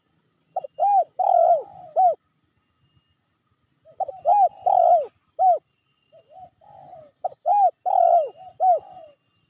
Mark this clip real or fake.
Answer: real